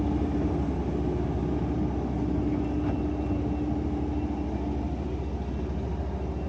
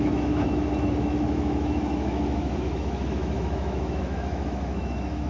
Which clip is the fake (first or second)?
second